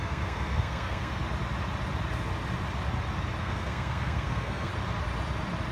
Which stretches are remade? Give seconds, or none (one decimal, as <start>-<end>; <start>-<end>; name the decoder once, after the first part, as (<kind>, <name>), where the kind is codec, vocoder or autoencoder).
0.0-1.2 (codec, SNAC); 3.4-4.7